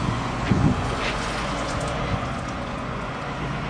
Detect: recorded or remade remade